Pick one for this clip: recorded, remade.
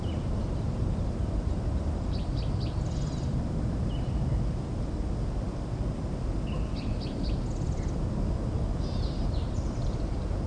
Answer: recorded